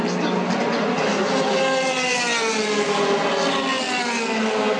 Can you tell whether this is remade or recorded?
recorded